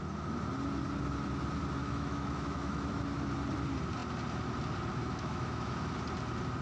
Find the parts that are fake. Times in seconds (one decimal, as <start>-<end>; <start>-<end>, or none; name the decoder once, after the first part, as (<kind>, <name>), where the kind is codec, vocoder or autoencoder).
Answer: 1.8-3.0 (autoencoder, DAC-VAE); 4.9-6.0